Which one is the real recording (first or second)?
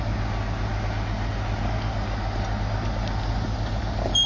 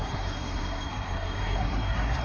first